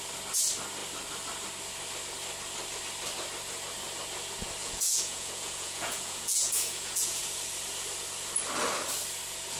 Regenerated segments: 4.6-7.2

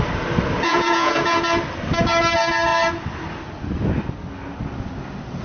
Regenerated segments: 0.7-1.4

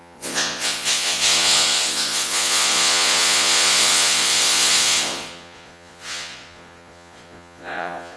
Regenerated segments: 0.0-8.2

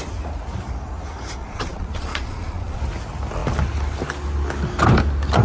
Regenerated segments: 1.4-2.8